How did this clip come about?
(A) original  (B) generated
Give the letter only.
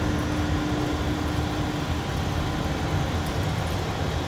A